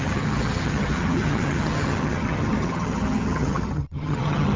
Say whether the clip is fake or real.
fake